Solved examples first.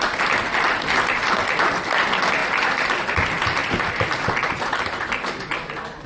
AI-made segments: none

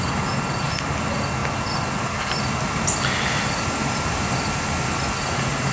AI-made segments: none

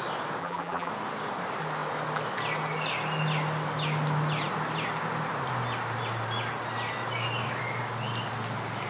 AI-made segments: 0.4-0.9 (vocoder, BigVGAN v2)

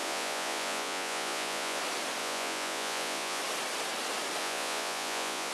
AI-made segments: 0.0-1.8 (vocoder, Vocos); 2.2-3.4; 4.4-5.5

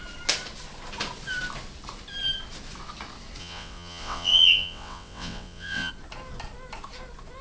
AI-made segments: 3.4-5.9 (vocoder, WaveNeXt)

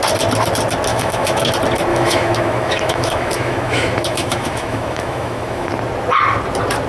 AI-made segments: 0.9-1.5 (autoencoder, DAC-VAE); 1.9-5.7

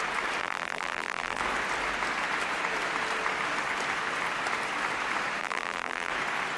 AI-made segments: 0.4-1.4 (vocoder, BigVGAN v2); 5.4-6.1

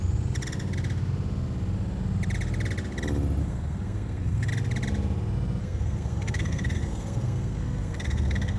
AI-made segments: 3.4-4.5 (codec, SNAC); 5.6-8.6